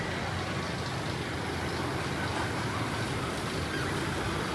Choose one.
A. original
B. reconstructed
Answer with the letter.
A